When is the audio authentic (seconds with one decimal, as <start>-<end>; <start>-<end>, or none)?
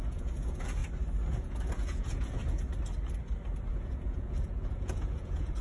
0.8-1.3; 2.4-3.7